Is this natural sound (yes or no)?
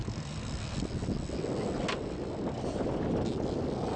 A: yes